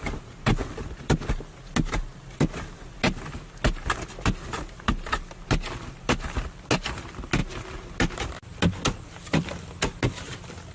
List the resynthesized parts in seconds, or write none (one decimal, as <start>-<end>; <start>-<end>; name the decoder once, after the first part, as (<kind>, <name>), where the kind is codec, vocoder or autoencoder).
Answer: none